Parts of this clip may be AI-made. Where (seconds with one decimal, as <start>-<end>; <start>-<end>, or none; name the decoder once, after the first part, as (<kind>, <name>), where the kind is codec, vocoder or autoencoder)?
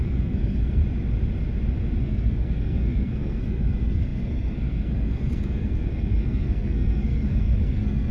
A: 0.0-0.8 (codec, SNAC); 2.0-8.1